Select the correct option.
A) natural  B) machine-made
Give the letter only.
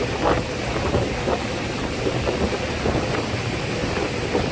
A